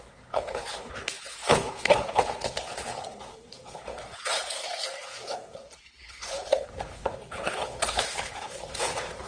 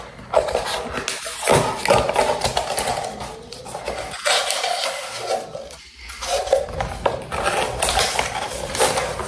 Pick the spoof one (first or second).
first